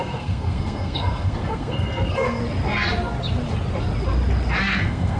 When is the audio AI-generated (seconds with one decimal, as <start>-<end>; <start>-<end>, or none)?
0.0-2.4; 4.7-5.2